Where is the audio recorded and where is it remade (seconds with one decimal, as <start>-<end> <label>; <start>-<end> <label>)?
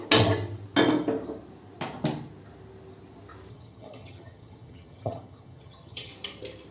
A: 0.0-3.5 recorded; 3.5-6.1 remade; 6.1-6.7 recorded